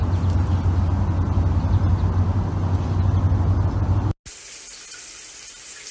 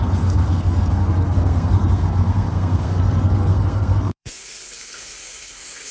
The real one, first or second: first